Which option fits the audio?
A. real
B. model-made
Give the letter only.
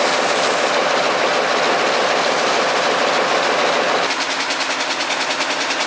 A